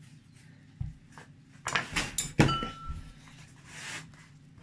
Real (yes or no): yes